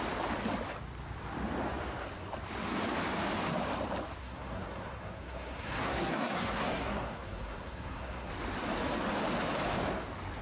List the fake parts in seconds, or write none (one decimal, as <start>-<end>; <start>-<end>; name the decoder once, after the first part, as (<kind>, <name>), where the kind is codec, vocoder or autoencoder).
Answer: 4.2-8.3 (codec, SNAC)